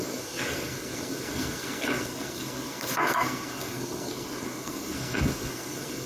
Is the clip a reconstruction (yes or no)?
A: yes